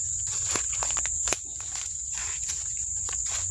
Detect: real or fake fake